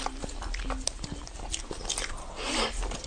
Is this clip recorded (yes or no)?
yes